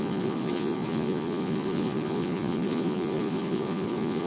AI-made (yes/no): yes